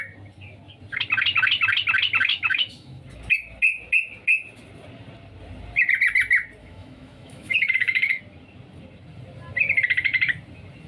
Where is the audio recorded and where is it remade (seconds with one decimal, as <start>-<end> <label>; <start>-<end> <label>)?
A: 0.0-2.3 recorded; 2.3-3.0 remade; 3.0-6.6 recorded; 6.6-8.2 remade; 8.2-10.9 recorded